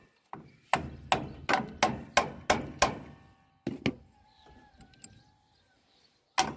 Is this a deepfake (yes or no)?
no